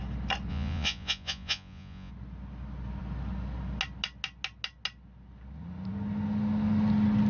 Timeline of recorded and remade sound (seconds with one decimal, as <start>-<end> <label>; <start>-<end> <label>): 0.0-0.5 recorded; 0.5-2.1 remade; 2.1-7.3 recorded